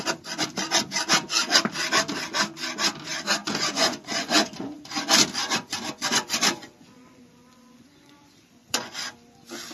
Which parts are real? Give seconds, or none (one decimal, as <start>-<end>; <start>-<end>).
0.0-3.4; 5.0-5.4; 9.1-9.7